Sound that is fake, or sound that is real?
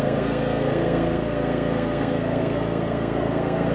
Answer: fake